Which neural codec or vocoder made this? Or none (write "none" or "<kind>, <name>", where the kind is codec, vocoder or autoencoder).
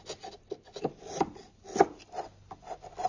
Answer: none